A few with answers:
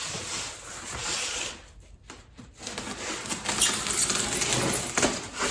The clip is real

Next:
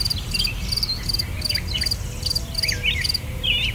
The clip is real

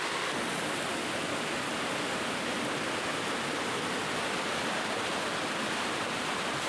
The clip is real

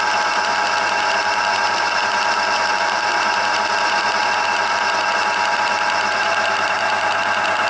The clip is fake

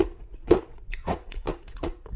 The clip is fake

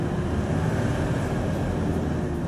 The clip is real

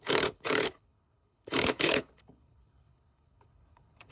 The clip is fake